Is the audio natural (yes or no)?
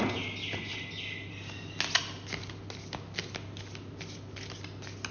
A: yes